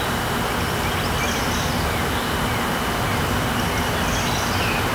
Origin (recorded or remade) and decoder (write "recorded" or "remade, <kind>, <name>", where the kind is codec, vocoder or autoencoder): recorded